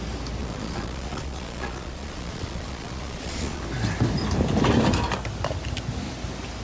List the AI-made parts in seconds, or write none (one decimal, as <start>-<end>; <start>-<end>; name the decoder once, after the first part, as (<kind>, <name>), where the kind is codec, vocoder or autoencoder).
0.4-3.6 (vocoder, Vocos)